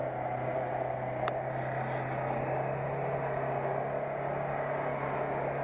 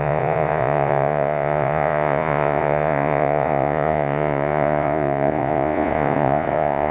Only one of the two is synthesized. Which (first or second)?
second